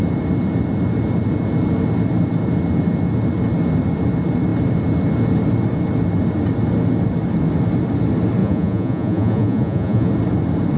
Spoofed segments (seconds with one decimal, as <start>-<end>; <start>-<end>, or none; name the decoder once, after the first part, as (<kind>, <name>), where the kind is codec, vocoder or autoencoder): 8.4-10.1 (vocoder, Vocos)